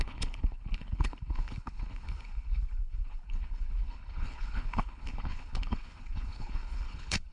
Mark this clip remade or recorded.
remade